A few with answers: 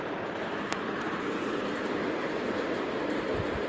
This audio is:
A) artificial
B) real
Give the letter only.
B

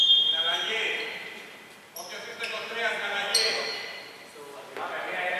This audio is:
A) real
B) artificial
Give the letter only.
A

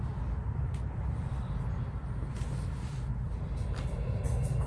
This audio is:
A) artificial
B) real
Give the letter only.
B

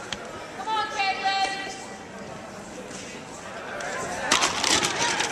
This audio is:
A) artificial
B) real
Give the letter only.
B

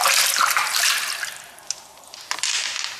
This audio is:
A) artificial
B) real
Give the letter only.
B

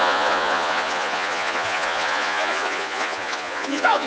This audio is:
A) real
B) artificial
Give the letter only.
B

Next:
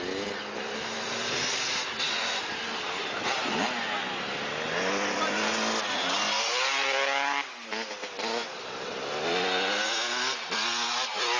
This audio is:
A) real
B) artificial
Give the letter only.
A